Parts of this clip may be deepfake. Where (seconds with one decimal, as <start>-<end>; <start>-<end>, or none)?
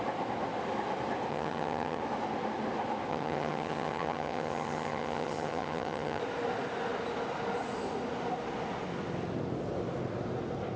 1.3-2.0; 3.1-6.2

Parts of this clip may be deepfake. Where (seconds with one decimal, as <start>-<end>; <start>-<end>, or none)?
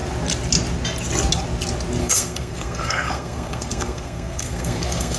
2.0-5.2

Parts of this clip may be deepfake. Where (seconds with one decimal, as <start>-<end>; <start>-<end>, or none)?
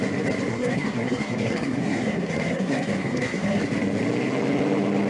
0.5-3.6